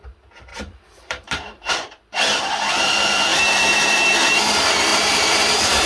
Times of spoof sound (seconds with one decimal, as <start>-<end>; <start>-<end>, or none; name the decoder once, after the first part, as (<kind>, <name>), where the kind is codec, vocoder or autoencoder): 0.5-1.7 (vocoder, BigVGAN v2); 3.3-4.4; 4.9-5.9